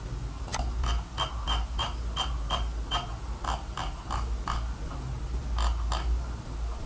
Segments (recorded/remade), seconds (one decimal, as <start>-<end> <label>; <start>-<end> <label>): 0.0-6.9 recorded